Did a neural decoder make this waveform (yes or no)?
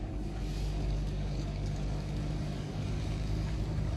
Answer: yes